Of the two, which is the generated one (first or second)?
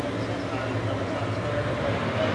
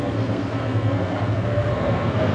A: second